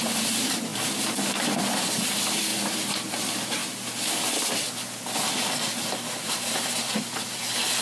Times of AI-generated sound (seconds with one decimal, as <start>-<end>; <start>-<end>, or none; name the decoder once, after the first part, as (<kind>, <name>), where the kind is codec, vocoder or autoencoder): none

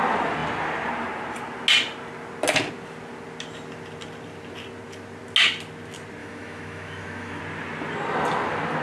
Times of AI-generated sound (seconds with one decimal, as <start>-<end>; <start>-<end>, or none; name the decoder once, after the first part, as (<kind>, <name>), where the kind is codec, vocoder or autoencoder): 6.2-7.4 (autoencoder, DAC-VAE)

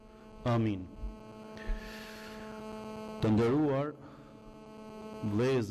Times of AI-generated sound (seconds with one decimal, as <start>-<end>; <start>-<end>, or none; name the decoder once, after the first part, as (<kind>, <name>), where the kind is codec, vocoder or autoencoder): none